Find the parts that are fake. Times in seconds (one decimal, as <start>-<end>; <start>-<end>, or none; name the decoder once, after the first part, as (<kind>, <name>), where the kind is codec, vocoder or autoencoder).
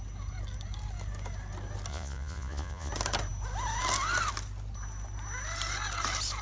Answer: 1.9-2.9 (vocoder, Vocos)